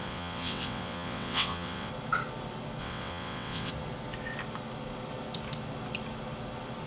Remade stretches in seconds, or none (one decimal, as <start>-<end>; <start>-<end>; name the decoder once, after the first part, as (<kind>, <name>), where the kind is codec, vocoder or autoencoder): 0.0-1.9 (vocoder, WaveNeXt); 2.8-3.7